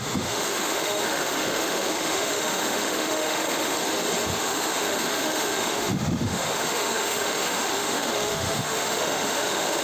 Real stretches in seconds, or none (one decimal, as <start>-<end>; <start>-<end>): 3.8-4.4